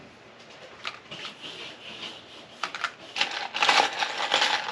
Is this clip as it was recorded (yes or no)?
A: yes